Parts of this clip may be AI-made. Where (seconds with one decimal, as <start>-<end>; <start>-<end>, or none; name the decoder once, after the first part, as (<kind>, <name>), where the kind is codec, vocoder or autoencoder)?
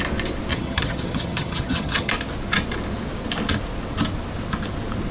0.5-2.1 (vocoder, HiFi-GAN)